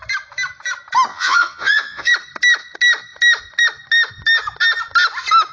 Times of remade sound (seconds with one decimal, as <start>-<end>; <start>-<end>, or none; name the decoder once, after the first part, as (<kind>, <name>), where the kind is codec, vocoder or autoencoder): 1.1-2.1 (vocoder, Vocos)